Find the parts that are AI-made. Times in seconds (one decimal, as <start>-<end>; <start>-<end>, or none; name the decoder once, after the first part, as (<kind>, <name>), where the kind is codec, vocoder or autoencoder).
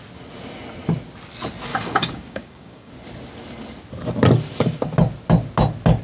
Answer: 1.7-2.9 (codec, DAC)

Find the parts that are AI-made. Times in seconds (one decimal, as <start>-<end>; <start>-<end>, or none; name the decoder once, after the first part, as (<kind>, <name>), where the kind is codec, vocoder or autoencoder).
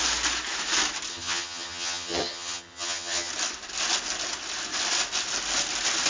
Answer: 1.1-3.3 (vocoder, HiFi-GAN)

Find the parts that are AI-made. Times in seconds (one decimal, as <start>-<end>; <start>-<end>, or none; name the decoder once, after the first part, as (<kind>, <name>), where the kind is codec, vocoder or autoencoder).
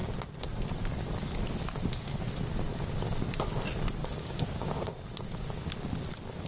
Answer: 4.0-4.7 (codec, DAC)